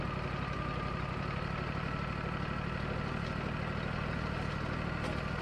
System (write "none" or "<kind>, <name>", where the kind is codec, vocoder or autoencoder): none